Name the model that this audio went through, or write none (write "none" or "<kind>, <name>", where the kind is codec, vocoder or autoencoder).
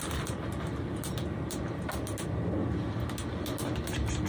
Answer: none